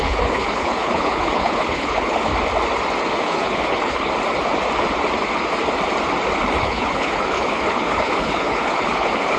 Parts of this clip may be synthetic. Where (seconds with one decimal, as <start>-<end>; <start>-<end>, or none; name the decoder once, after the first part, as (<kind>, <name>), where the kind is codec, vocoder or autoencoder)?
0.0-2.3 (codec, HILCodec); 3.1-4.1; 6.6-9.4